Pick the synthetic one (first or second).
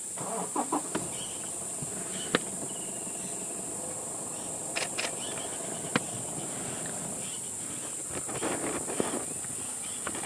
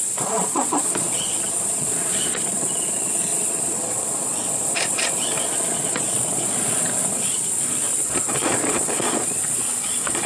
second